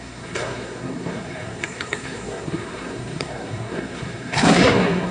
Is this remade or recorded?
remade